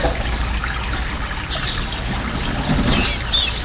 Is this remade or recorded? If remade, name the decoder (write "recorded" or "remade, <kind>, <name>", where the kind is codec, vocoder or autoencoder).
recorded